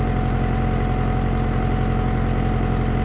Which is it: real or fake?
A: real